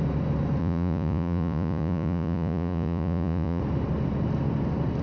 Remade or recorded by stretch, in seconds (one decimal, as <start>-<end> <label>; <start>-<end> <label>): 0.0-0.6 recorded; 0.6-3.6 remade; 3.6-5.0 recorded